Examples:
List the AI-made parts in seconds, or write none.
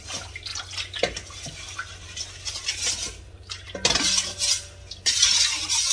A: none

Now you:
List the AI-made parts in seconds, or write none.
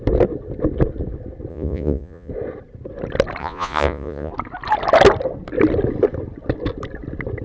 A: 1.5-2.3; 3.4-4.3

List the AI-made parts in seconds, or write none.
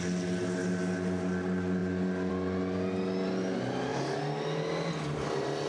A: none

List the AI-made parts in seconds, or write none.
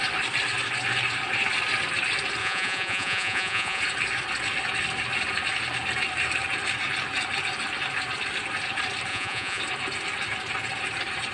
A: 2.4-3.8; 9.1-9.6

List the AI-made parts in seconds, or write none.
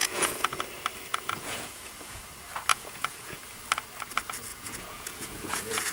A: 0.0-0.6; 1.1-2.2; 2.7-3.4; 4.5-5.9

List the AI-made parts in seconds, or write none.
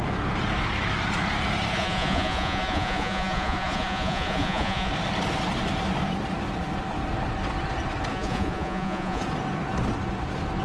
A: 1.7-4.9; 8.1-9.2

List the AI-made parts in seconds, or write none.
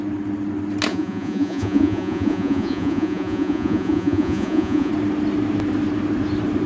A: 0.9-4.9